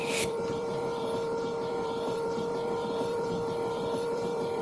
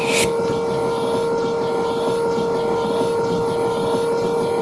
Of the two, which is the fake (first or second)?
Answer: first